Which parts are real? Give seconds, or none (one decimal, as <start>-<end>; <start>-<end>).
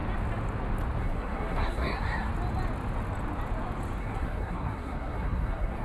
0.0-1.0; 2.3-4.0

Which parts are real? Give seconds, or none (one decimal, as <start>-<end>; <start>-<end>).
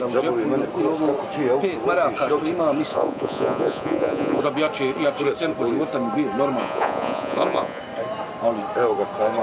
0.0-2.9; 4.4-6.6; 7.8-9.4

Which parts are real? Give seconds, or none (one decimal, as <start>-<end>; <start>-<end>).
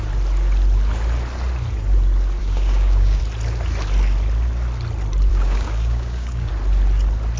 0.0-2.4; 3.2-5.3; 6.5-7.4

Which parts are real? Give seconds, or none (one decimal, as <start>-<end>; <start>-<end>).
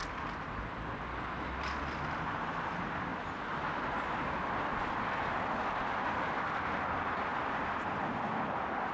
0.0-8.9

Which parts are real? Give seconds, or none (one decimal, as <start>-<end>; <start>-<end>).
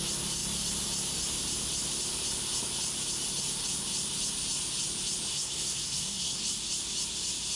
0.0-5.3; 6.4-7.6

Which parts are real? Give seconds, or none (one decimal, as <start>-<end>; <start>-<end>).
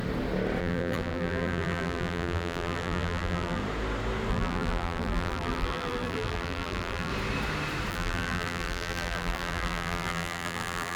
0.0-0.6; 3.6-4.3; 7.1-7.9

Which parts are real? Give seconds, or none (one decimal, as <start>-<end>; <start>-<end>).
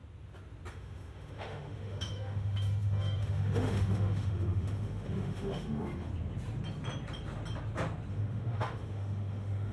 0.0-0.7; 6.1-8.1